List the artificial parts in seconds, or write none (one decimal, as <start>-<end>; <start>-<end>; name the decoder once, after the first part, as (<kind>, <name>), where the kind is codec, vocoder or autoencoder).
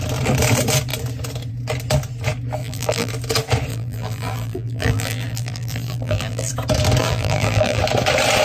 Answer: 2.6-3.1 (vocoder, BigVGAN v2); 3.7-6.5; 7.0-7.8